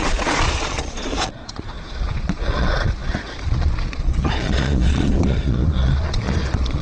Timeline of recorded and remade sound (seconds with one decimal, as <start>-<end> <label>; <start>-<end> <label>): 0.0-6.8 remade

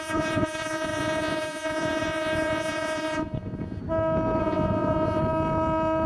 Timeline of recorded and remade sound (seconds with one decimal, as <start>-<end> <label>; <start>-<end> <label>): 0.0-3.8 remade; 3.8-4.4 recorded; 4.4-5.2 remade; 5.2-6.1 recorded

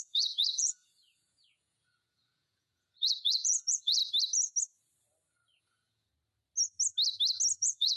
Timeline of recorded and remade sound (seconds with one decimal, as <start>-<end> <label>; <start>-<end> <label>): 0.0-4.0 remade; 4.0-5.6 recorded; 5.6-6.1 remade; 6.1-7.6 recorded; 7.6-8.0 remade

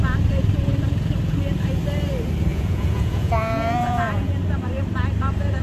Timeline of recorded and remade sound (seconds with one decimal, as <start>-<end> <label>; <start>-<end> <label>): 0.0-2.5 recorded; 2.5-4.3 remade; 4.3-5.6 recorded

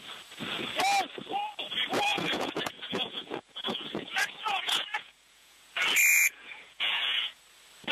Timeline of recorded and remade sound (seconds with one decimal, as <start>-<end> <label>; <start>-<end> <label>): 0.0-2.1 recorded; 2.1-5.6 remade; 5.6-6.1 recorded; 6.1-7.4 remade; 7.4-7.9 recorded

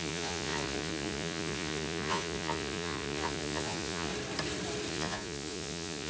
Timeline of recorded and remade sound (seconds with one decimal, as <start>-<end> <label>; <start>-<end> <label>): 0.0-4.1 remade; 4.1-4.9 recorded; 4.9-6.1 remade